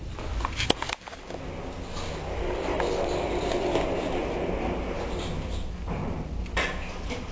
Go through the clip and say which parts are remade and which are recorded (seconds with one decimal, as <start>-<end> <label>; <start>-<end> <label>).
0.0-1.9 recorded; 1.9-4.2 remade; 4.2-7.3 recorded